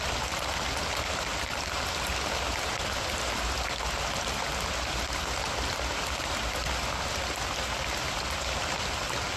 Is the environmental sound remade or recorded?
recorded